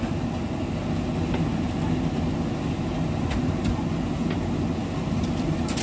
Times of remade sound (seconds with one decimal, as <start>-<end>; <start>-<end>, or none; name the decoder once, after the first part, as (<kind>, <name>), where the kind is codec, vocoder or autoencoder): 4.8-5.8 (vocoder, BigVGAN v2)